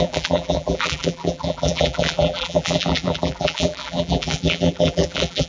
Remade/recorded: remade